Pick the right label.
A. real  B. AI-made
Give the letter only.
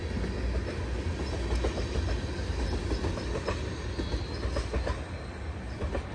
A